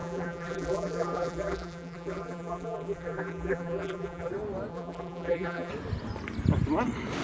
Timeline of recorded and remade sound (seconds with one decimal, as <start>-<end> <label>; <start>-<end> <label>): 0.0-4.3 remade; 4.3-4.7 recorded; 4.7-5.7 remade; 5.7-7.2 recorded